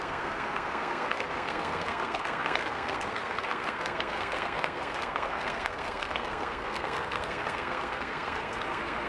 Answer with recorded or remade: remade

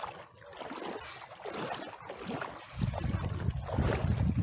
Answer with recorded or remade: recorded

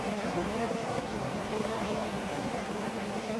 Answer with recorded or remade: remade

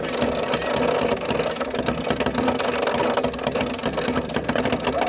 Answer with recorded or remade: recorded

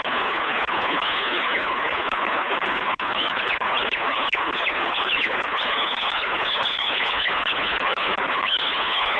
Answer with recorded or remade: remade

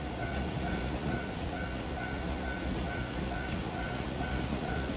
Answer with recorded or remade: remade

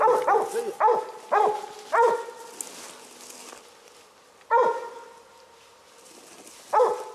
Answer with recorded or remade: recorded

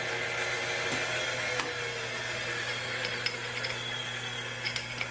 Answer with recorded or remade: recorded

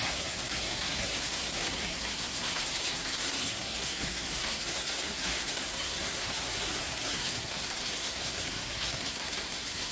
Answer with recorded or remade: remade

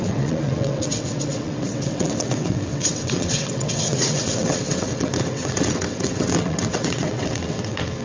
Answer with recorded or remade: remade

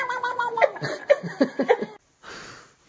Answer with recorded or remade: recorded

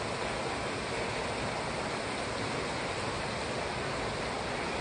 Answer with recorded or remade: recorded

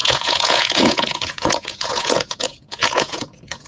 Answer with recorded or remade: remade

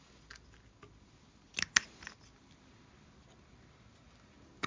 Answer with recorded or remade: recorded